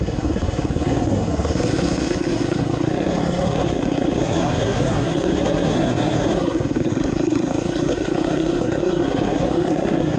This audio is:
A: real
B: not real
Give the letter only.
B